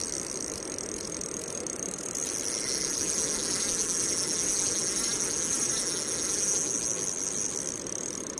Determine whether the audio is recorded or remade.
recorded